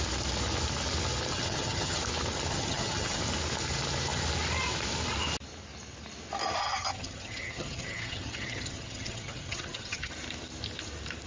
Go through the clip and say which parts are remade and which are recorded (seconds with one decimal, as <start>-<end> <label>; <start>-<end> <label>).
0.0-1.3 recorded; 1.3-2.0 remade; 2.0-2.5 recorded; 2.5-3.2 remade; 3.2-6.6 recorded; 6.6-10.1 remade; 10.1-11.3 recorded